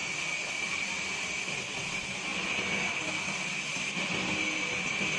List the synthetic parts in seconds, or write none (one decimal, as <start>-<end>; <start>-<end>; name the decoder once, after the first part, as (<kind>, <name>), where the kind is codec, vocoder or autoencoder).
none